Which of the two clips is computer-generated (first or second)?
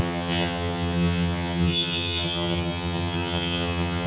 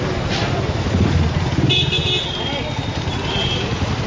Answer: first